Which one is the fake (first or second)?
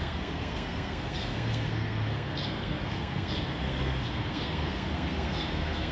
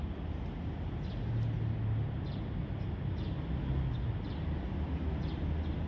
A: first